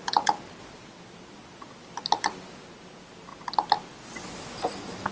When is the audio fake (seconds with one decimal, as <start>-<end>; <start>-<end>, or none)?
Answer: none